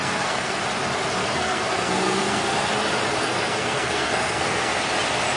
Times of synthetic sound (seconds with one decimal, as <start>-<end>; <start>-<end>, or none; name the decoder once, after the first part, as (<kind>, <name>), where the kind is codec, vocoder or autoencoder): 0.0-0.6 (codec, SNAC); 1.2-2.7; 3.2-4.7